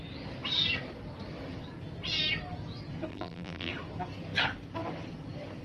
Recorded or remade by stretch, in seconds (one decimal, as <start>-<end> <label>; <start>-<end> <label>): 0.0-3.1 recorded; 3.1-3.7 remade; 3.7-5.6 recorded